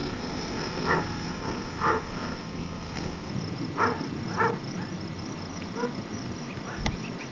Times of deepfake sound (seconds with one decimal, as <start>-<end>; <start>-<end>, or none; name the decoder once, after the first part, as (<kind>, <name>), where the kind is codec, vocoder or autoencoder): 0.0-3.3 (codec, SNAC)